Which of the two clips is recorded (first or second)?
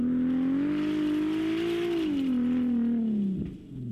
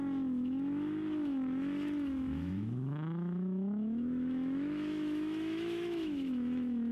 first